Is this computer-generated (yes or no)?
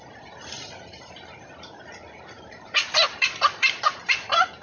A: yes